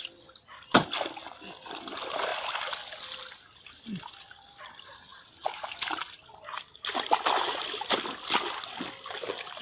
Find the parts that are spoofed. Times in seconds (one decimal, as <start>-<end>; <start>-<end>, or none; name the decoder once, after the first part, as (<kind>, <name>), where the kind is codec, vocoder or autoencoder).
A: none